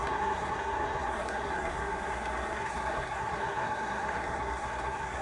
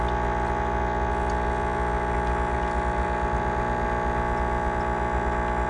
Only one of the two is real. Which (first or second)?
second